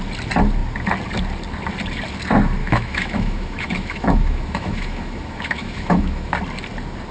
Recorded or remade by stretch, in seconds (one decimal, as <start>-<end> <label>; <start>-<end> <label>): 0.0-2.6 recorded; 2.6-6.3 remade; 6.3-7.1 recorded